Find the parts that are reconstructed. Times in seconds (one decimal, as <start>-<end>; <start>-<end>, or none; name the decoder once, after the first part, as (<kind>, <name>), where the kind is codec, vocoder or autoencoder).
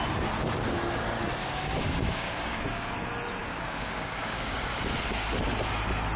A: 1.4-2.9 (codec, DAC); 3.4-4.8